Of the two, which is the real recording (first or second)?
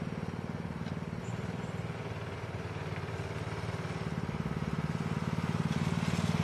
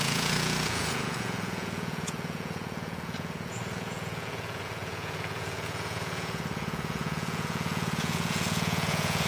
first